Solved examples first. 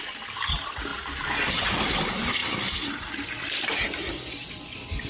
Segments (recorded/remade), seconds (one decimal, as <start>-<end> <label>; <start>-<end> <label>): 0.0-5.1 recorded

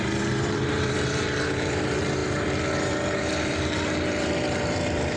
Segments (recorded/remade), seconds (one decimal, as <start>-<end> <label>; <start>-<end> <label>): 0.0-5.2 remade

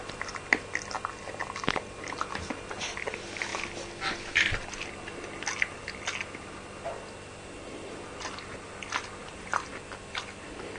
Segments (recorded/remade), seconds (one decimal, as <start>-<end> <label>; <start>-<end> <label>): 0.0-9.2 recorded; 9.2-9.7 remade; 9.7-10.8 recorded

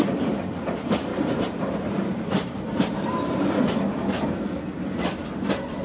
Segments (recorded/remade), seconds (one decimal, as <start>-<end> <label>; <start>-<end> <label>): 0.0-1.1 recorded; 1.1-2.9 remade; 2.9-5.8 recorded